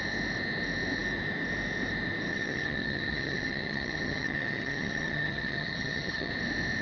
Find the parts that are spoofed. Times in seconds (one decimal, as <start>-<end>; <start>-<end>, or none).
2.3-6.3